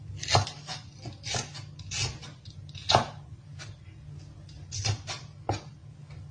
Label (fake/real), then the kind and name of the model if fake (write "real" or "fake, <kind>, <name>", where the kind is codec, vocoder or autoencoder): real